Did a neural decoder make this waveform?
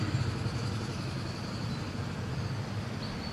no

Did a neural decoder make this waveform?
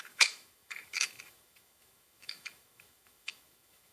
yes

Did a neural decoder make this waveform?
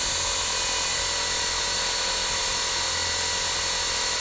no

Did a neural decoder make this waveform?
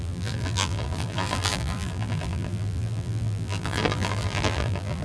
yes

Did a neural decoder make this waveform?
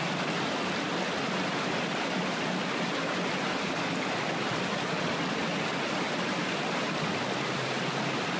no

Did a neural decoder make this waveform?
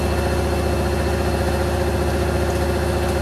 no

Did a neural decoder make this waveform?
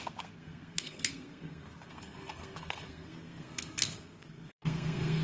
yes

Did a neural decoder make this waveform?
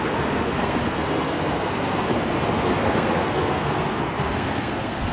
yes